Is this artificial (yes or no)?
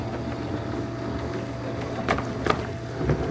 no